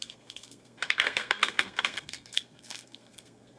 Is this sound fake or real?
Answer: fake